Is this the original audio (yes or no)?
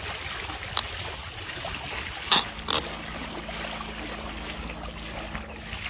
yes